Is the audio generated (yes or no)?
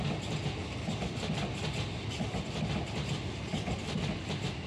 no